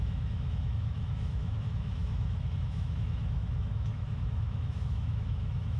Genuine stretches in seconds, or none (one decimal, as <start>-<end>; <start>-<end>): none